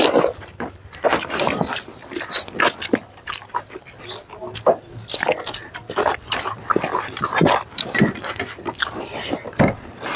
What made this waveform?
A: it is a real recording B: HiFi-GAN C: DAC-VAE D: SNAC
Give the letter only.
A